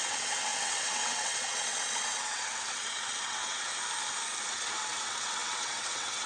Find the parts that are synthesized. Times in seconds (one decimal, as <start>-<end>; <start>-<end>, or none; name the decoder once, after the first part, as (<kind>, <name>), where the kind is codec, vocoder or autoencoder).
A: 0.0-3.7 (vocoder, WaveNeXt); 4.5-6.3